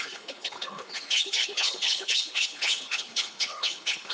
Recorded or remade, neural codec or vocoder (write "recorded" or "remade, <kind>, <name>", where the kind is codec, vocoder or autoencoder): remade, codec, HILCodec